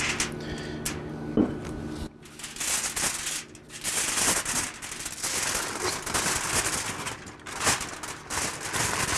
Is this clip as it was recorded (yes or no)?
yes